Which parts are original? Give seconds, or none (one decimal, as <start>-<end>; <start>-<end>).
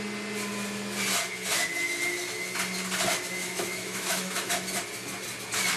0.0-3.4; 4.5-5.8